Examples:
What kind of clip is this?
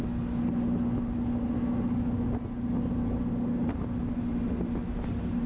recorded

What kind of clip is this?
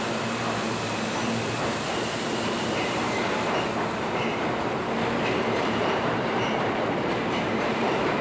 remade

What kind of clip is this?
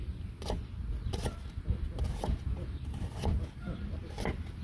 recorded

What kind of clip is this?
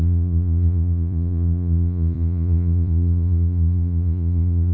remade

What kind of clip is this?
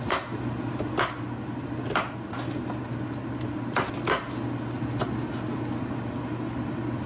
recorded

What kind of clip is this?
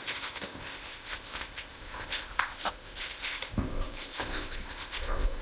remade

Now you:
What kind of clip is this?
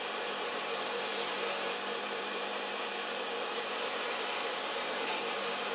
remade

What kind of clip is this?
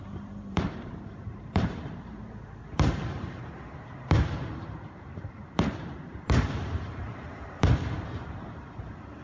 remade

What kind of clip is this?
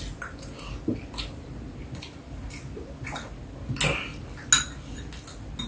recorded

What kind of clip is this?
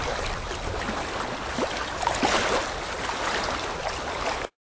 recorded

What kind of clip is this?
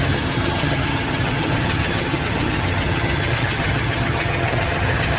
remade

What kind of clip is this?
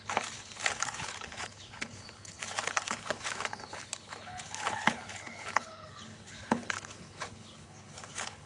remade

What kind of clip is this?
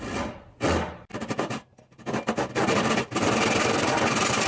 recorded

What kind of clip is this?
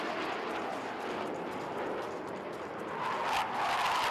recorded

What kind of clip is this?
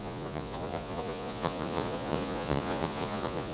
remade